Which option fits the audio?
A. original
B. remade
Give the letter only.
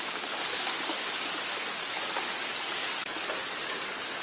B